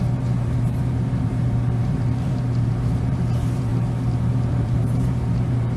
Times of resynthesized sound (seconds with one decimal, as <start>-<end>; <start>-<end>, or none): 0.0-3.7; 4.5-5.8